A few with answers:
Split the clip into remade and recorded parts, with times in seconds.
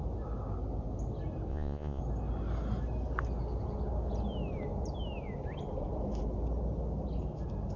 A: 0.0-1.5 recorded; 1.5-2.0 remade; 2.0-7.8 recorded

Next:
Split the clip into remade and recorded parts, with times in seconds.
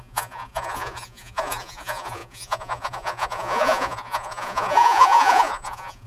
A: 0.0-6.1 remade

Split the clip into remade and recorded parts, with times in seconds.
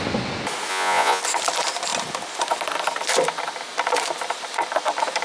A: 0.0-0.7 recorded; 0.7-1.2 remade; 1.2-5.2 recorded